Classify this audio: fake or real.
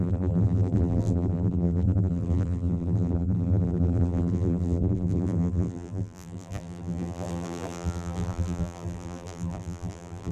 fake